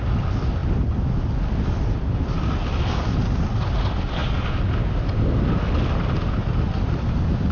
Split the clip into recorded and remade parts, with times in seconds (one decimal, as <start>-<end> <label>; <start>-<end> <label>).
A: 0.0-7.5 recorded